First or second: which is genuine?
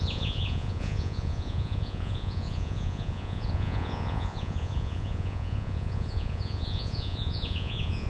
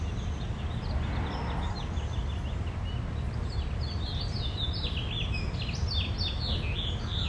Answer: second